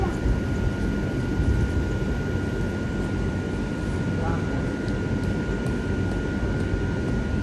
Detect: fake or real real